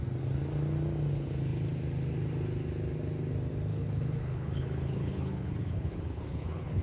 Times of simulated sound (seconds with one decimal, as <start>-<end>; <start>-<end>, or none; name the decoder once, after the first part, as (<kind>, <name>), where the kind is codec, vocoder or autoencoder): 3.7-6.8 (codec, HILCodec)